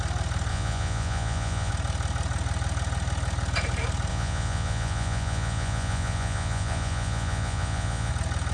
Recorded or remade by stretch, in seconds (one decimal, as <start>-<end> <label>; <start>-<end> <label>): 0.0-0.5 recorded; 0.5-1.7 remade; 1.7-4.1 recorded; 4.1-8.1 remade; 8.1-8.5 recorded